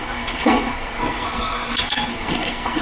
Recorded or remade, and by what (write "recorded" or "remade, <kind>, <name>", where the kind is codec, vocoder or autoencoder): remade, codec, SNAC